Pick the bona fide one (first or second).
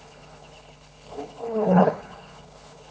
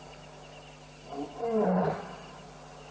second